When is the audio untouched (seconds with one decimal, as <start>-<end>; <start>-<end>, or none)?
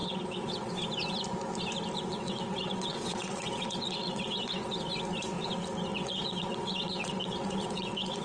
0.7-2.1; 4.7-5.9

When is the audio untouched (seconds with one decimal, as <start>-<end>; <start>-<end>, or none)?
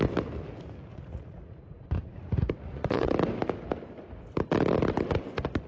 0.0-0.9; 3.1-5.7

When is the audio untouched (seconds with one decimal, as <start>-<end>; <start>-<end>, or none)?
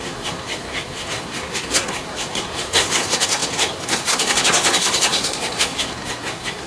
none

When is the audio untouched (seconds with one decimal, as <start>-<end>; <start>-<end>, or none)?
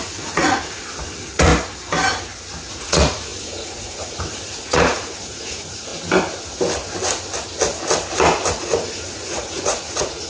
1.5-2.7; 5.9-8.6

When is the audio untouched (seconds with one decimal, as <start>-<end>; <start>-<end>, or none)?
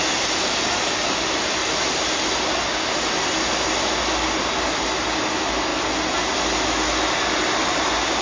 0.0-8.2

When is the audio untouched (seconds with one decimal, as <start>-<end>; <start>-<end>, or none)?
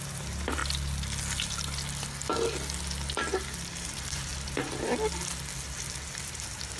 0.6-3.7; 4.3-6.3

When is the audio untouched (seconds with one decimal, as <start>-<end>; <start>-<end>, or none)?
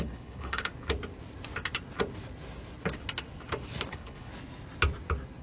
0.7-3.9; 4.3-5.4